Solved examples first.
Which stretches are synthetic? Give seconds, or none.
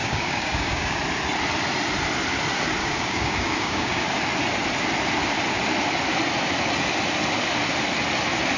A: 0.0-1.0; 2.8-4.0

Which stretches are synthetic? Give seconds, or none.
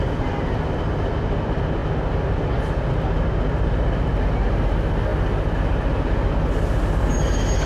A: none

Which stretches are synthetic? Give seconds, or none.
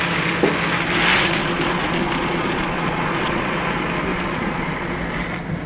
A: 1.1-3.6; 4.1-5.0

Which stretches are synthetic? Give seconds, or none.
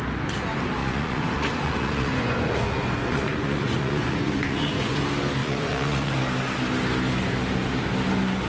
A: 0.8-5.0; 5.4-6.1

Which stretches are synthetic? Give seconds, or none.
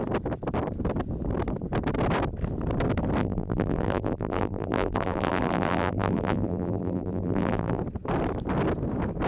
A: 3.2-7.8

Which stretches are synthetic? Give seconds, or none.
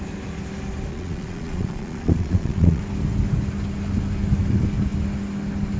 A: 0.9-2.8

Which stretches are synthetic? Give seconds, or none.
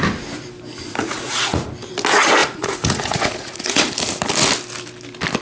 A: 1.0-1.7; 2.4-3.9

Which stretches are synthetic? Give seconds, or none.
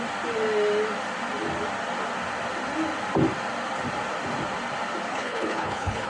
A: 5.1-6.1